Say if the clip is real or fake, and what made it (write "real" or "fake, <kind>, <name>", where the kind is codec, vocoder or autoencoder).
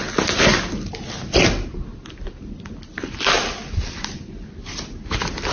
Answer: real